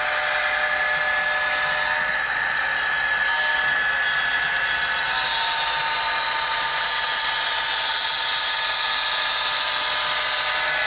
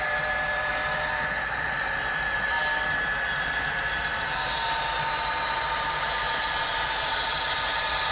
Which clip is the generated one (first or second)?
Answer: second